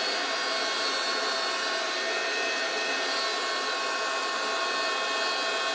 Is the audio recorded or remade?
recorded